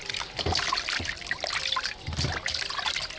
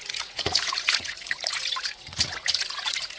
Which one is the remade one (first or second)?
second